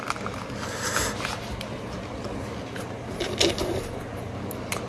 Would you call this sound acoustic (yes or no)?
yes